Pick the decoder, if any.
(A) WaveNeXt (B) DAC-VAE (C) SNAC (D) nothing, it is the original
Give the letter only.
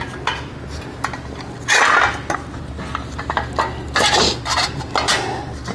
D